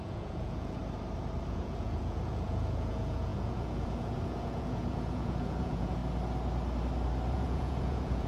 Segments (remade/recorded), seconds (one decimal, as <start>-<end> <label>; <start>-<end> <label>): 0.0-0.8 remade; 0.8-1.5 recorded; 1.5-6.0 remade; 6.0-7.3 recorded; 7.3-8.3 remade